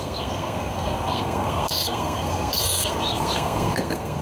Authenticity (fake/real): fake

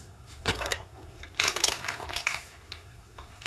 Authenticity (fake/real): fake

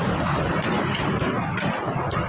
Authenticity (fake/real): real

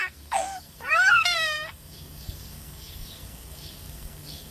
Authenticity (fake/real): fake